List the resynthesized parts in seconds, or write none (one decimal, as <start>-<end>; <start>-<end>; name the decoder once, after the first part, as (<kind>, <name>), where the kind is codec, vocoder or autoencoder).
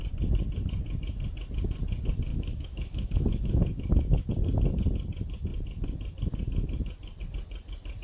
2.3-4.3 (autoencoder, DAC-VAE)